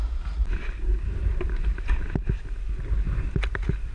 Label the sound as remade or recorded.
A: recorded